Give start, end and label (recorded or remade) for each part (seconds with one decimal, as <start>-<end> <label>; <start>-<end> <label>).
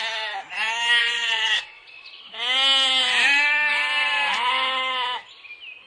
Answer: 0.0-1.0 recorded; 1.0-2.2 remade; 2.2-5.9 recorded